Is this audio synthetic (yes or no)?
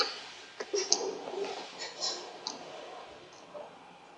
no